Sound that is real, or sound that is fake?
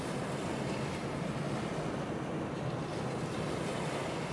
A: real